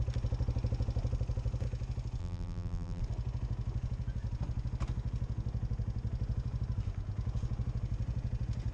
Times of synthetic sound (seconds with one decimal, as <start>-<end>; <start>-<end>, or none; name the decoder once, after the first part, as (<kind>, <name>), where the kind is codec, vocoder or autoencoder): 2.2-3.0 (vocoder, BigVGAN v2)